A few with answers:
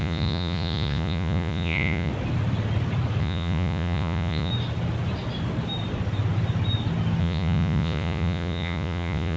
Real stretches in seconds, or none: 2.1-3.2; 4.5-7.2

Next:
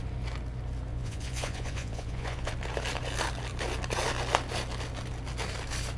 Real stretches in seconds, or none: 0.0-0.9; 2.5-6.0

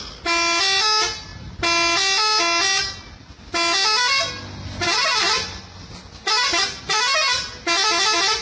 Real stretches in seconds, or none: 0.0-8.4

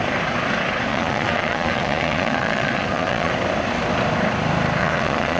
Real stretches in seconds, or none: 0.0-0.9; 3.3-4.8